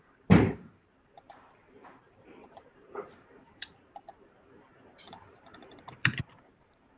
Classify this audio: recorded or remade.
remade